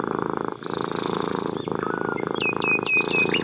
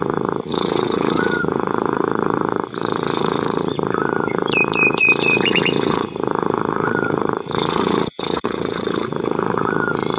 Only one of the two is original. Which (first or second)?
first